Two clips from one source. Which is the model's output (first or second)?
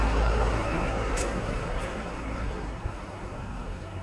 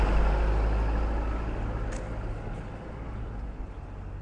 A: first